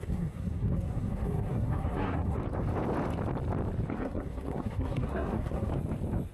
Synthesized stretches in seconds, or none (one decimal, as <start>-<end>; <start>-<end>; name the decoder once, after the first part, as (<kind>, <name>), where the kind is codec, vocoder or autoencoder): 0.0-2.4 (codec, SNAC); 3.9-5.7